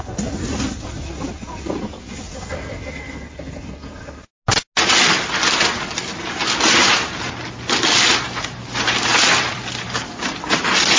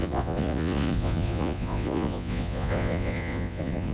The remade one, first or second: second